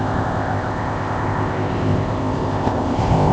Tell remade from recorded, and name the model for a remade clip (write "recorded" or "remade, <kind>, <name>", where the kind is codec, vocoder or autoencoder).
remade, codec, ZipCodec